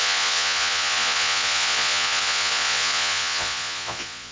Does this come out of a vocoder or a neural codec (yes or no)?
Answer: yes